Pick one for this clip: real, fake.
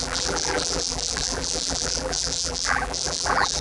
fake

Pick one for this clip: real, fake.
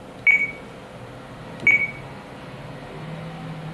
real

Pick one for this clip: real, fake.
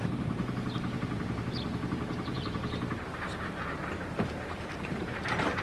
fake